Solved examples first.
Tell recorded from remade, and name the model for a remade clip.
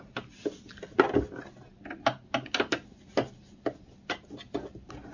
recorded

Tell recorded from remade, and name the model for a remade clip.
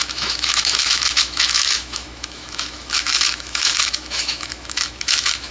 remade, autoencoder, DAC-VAE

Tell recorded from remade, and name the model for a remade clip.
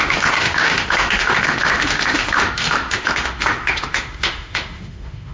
remade, autoencoder, DAC-VAE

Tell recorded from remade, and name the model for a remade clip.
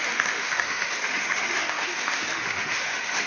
remade, autoencoder, DAC-VAE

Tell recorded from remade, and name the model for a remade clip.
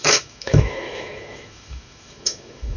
remade, autoencoder, DAC-VAE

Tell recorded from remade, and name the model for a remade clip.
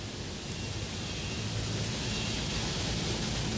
recorded